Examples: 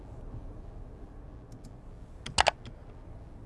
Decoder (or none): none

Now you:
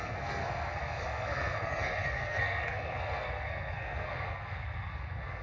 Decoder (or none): codec, SNAC